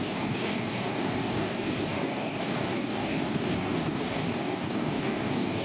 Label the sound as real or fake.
fake